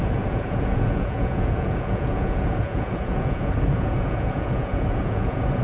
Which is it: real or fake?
fake